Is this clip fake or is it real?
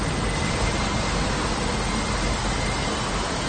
real